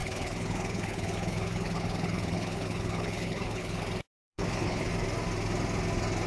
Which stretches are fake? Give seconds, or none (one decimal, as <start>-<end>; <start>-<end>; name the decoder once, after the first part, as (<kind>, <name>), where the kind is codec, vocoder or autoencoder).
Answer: 0.0-3.8 (codec, HILCodec); 4.2-4.9